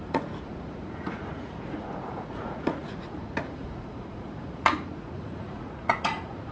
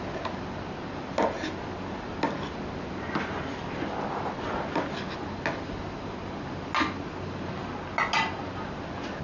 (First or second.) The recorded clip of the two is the second